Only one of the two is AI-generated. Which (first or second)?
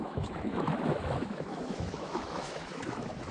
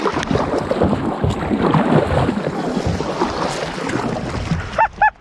first